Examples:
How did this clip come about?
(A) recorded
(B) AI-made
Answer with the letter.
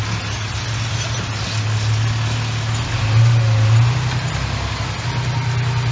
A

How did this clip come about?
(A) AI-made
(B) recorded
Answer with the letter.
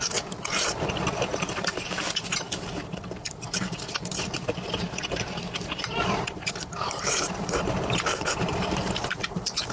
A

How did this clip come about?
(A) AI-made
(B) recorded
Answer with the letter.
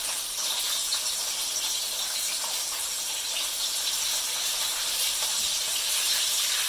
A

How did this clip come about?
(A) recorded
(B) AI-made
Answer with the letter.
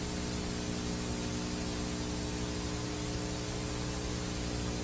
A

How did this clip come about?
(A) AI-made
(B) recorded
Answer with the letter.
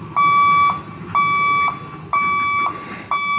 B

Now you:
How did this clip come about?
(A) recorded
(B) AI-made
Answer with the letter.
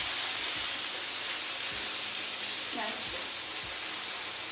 A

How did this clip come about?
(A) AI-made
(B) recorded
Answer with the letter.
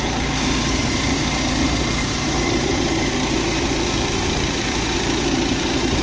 A